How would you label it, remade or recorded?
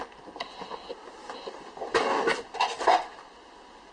recorded